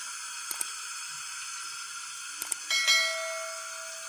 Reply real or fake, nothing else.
real